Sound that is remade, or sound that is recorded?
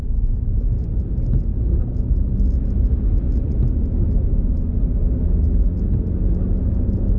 recorded